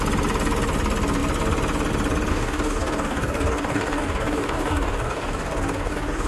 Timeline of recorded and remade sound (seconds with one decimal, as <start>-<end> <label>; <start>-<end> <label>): 0.0-2.3 recorded; 2.3-6.3 remade